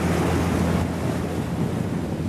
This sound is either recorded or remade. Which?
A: recorded